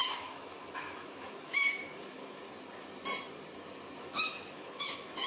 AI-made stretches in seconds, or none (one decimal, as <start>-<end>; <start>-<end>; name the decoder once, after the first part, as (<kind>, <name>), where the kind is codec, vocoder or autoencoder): 0.0-2.4 (autoencoder, DAC-VAE); 4.0-5.3